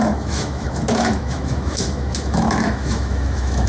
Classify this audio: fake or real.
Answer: fake